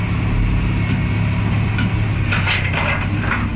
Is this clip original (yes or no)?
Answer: yes